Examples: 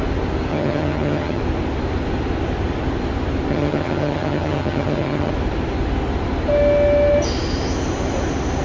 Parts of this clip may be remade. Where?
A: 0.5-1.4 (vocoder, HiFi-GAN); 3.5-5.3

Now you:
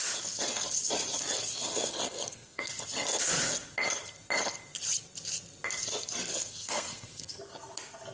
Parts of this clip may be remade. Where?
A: 1.5-2.7 (codec, SNAC); 6.3-7.4

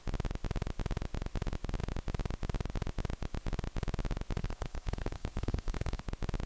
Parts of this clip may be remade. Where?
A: 4.4-6.0 (codec, SNAC)

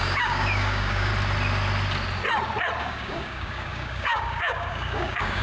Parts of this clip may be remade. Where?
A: 0.0-1.1 (codec, DAC); 2.8-5.4

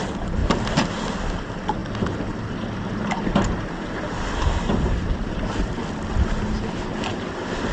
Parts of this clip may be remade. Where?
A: none

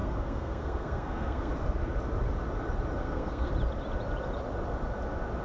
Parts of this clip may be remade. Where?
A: 0.0-1.5 (codec, SNAC); 3.0-3.5

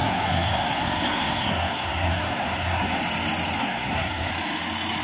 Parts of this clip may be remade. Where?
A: 0.0-3.0 (codec, SNAC); 3.6-4.3

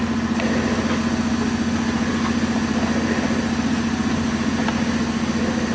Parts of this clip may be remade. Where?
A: none